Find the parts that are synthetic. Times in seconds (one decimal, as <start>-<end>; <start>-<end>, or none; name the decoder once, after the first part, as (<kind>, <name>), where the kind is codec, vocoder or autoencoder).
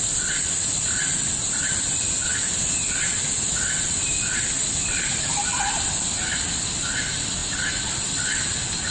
none